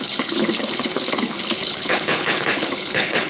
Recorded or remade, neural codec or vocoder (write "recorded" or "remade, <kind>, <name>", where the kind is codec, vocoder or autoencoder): remade, codec, HILCodec